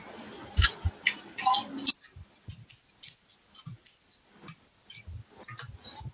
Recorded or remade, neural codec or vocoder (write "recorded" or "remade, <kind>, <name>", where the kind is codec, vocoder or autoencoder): recorded